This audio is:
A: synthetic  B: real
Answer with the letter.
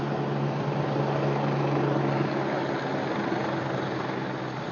B